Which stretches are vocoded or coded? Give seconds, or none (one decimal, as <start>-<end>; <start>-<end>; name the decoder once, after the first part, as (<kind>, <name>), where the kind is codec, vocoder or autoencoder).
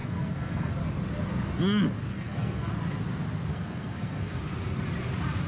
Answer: 0.0-0.7 (codec, SNAC); 2.1-2.7; 3.5-4.4